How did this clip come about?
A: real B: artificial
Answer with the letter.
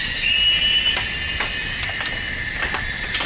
A